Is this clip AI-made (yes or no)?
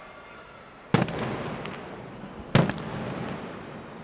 no